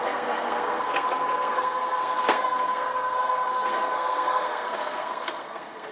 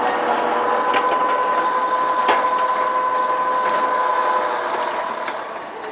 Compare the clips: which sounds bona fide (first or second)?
second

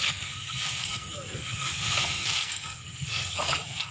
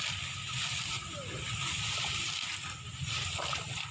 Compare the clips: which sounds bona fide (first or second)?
second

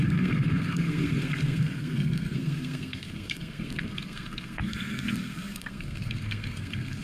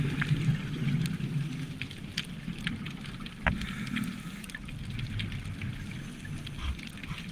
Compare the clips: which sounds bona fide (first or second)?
second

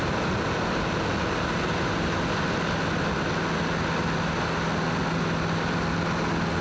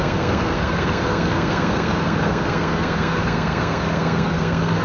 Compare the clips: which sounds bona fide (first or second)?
first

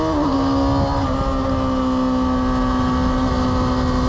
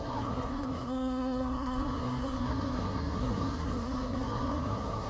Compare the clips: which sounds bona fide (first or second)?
first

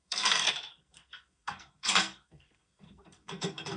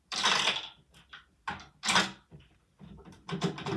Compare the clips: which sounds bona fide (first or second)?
second